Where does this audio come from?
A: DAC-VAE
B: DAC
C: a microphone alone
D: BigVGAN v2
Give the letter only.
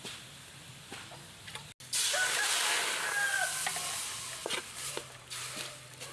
C